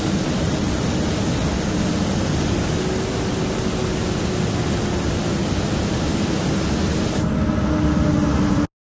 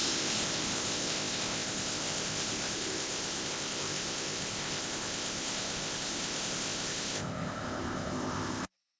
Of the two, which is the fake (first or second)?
second